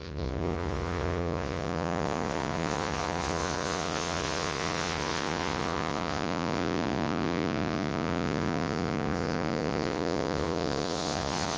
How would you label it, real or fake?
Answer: fake